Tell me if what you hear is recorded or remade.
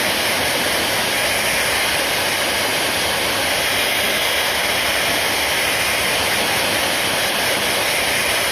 recorded